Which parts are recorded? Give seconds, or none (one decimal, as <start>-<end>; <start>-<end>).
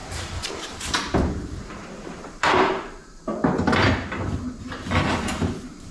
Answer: 0.0-0.5; 3.3-4.6